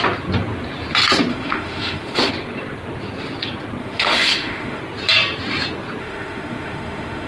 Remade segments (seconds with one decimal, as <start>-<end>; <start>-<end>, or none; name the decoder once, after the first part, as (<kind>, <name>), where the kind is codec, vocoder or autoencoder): 1.3-2.3 (autoencoder, DAC-VAE); 3.8-4.8; 6.0-7.3